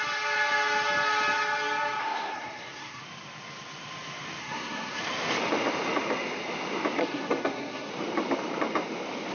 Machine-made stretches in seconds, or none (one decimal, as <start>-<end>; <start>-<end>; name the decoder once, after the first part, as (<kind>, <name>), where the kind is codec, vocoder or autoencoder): 2.0-3.0 (codec, SNAC); 4.4-5.0; 7.0-7.9